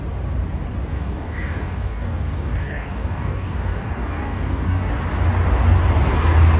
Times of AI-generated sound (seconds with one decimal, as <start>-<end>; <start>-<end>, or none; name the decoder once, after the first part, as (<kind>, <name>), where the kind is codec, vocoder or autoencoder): 0.9-4.9 (codec, DAC)